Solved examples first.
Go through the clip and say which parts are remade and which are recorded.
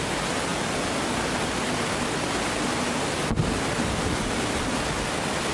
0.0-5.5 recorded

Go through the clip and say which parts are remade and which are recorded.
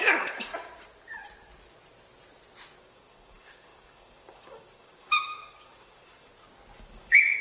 0.0-0.5 remade; 0.5-2.8 recorded; 2.8-6.3 remade; 6.3-6.9 recorded; 6.9-7.4 remade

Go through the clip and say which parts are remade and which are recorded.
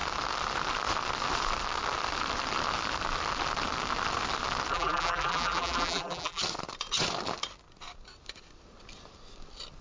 0.0-4.7 recorded; 4.7-6.4 remade; 6.4-9.8 recorded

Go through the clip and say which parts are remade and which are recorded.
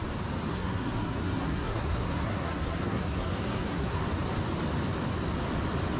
0.0-0.5 recorded; 0.5-4.0 remade; 4.0-6.0 recorded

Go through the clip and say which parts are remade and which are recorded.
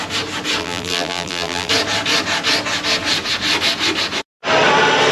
0.0-0.6 recorded; 0.6-1.7 remade; 1.7-5.1 recorded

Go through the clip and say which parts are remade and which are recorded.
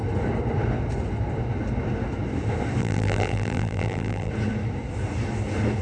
0.0-2.8 recorded; 2.8-4.3 remade; 4.3-5.8 recorded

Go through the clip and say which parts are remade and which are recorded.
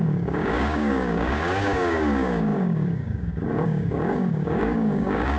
0.0-5.4 remade